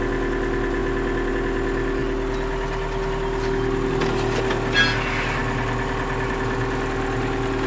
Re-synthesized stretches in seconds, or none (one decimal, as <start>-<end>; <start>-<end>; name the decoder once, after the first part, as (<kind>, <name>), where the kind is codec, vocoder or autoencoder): none